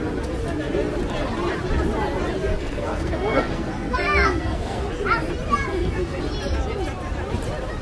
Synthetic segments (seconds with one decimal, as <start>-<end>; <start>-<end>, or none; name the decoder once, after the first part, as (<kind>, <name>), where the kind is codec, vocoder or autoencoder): 2.5-4.9 (codec, SNAC); 5.7-6.2